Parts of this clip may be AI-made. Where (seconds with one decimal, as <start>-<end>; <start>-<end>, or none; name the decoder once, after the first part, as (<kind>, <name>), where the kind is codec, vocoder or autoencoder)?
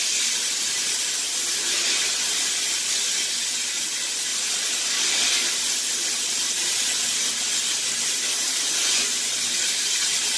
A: 8.8-9.3 (vocoder, Vocos)